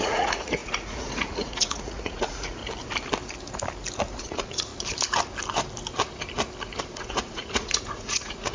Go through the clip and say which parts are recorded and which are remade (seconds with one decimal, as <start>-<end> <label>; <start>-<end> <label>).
0.0-2.6 remade; 2.6-4.2 recorded; 4.2-4.7 remade; 4.7-6.8 recorded; 6.8-8.5 remade